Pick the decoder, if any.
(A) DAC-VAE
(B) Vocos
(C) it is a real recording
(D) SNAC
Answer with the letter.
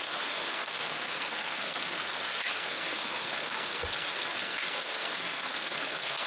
D